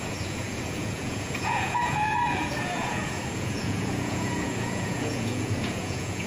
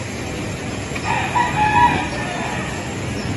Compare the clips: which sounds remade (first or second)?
first